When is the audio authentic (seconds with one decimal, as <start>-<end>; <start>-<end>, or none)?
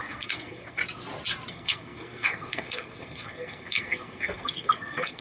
0.8-1.5